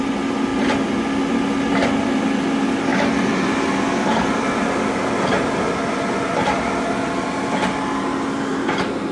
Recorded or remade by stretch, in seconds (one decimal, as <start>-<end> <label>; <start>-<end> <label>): 0.0-9.1 recorded